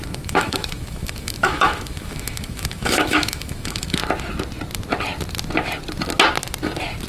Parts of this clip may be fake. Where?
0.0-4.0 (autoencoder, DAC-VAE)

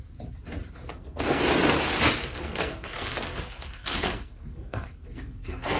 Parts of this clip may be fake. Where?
0.8-1.4 (codec, SNAC); 2.2-5.8